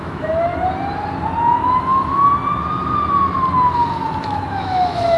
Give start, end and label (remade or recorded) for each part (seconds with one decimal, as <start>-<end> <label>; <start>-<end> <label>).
0.0-0.5 remade; 0.5-1.8 recorded; 1.8-2.3 remade; 2.3-4.2 recorded; 4.2-5.2 remade